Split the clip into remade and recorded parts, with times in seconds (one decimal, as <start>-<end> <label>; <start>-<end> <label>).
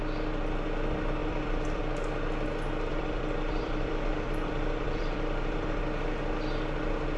0.0-1.2 recorded; 1.2-1.8 remade; 1.8-2.9 recorded; 2.9-5.8 remade; 5.8-7.2 recorded